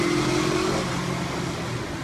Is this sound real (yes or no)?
yes